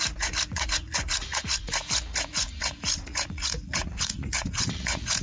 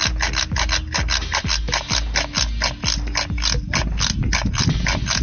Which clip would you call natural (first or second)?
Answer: second